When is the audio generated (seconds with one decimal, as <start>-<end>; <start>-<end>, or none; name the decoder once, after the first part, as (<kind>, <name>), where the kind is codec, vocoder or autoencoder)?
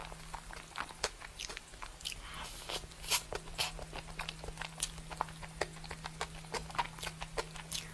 none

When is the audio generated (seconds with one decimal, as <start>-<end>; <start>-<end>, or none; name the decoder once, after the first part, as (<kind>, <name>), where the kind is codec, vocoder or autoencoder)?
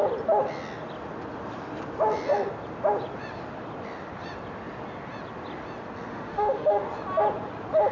6.1-6.8 (autoencoder, DAC-VAE)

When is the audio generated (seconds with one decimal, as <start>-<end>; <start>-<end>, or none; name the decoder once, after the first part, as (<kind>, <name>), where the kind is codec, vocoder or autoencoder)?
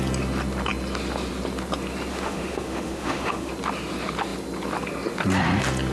2.1-3.5 (autoencoder, DAC-VAE)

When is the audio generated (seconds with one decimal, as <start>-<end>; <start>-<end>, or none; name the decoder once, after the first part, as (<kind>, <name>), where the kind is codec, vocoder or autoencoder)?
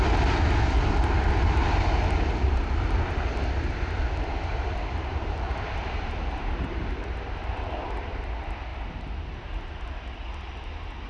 4.5-6.8 (vocoder, BigVGAN v2)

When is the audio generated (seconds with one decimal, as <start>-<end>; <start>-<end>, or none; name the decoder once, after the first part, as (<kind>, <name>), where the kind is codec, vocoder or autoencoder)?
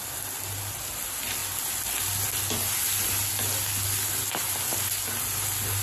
none